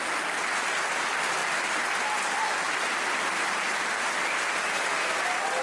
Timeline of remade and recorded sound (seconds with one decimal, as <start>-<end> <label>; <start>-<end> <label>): 0.0-5.6 recorded